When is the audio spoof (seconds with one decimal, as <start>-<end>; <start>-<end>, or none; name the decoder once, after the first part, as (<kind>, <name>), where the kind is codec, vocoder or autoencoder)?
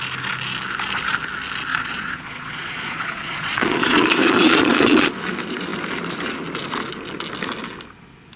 1.7-5.1 (vocoder, Vocos)